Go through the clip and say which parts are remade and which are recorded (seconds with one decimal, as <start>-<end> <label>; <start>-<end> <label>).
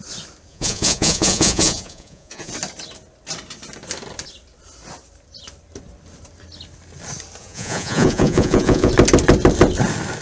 0.0-0.5 recorded; 0.5-2.5 remade; 2.5-7.4 recorded; 7.4-8.9 remade; 8.9-10.2 recorded